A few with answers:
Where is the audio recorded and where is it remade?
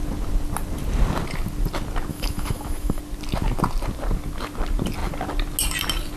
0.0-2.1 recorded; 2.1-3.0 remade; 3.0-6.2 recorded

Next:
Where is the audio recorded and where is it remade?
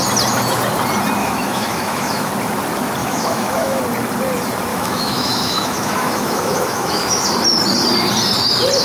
0.0-1.2 recorded; 1.2-2.3 remade; 2.3-3.0 recorded; 3.0-3.8 remade; 3.8-4.7 recorded; 4.7-7.3 remade; 7.3-8.8 recorded